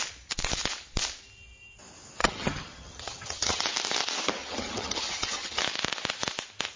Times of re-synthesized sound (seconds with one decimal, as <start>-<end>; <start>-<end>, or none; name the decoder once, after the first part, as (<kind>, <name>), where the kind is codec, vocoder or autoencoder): 2.2-3.6 (vocoder, HiFi-GAN); 4.4-5.6